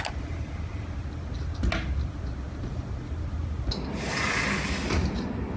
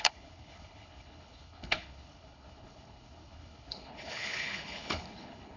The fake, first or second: second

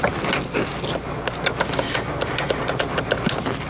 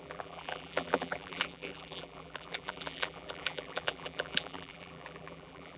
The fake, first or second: second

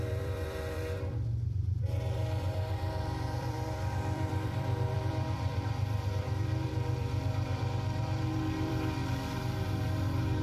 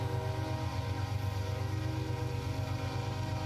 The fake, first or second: first